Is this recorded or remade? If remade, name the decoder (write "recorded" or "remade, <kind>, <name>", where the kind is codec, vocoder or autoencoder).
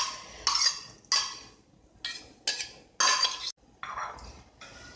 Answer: recorded